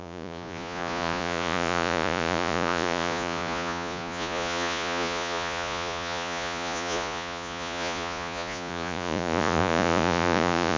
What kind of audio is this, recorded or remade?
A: remade